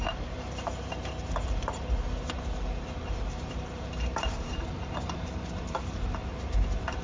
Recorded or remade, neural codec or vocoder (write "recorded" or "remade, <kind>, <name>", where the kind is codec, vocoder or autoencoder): remade, vocoder, BigVGAN v2